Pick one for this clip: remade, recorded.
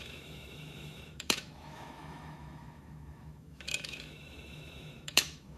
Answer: remade